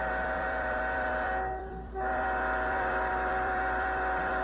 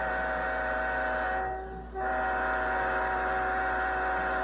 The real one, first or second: second